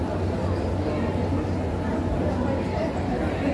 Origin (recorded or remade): recorded